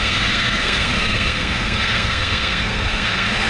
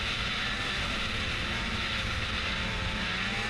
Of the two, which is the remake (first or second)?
first